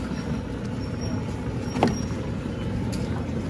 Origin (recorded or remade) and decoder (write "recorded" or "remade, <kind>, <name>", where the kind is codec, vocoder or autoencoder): recorded